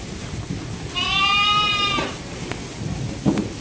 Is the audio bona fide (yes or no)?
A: yes